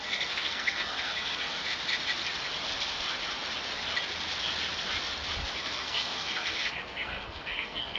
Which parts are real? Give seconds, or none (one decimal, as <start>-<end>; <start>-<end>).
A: 1.6-5.4